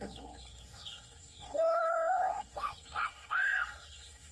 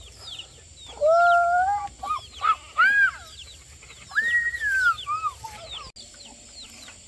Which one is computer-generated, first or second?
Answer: first